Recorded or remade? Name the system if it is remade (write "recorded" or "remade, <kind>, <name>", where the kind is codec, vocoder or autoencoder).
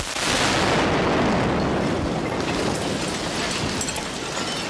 recorded